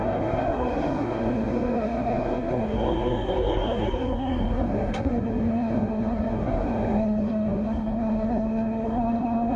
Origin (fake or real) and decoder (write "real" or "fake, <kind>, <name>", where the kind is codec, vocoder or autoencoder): fake, codec, SNAC